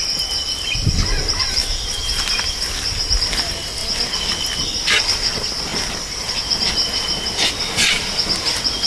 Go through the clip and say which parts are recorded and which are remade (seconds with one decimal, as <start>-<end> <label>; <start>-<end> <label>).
0.0-3.8 recorded; 3.8-5.3 remade; 5.3-8.9 recorded